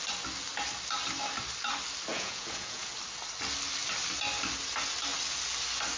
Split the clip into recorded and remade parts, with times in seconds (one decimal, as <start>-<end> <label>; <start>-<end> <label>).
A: 0.0-2.1 recorded; 2.1-2.9 remade; 2.9-6.0 recorded